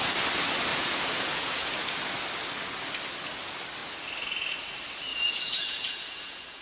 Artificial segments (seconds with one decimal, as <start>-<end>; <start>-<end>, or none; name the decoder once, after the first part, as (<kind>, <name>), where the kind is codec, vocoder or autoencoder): 0.7-1.7 (vocoder, Vocos); 5.1-6.6